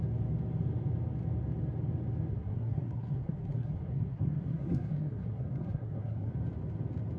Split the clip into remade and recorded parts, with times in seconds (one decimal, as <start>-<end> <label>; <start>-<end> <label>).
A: 0.0-2.3 recorded; 2.3-6.3 remade; 6.3-7.2 recorded